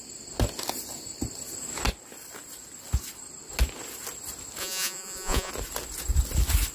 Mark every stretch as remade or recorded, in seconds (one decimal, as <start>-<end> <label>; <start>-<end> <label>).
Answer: 0.0-4.6 recorded; 4.6-5.5 remade; 5.5-6.7 recorded